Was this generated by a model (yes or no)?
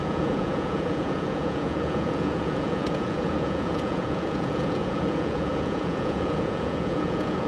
yes